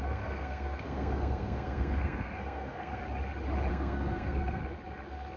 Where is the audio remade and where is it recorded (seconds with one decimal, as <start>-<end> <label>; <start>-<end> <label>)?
0.0-3.0 remade; 3.0-3.7 recorded; 3.7-4.6 remade; 4.6-5.4 recorded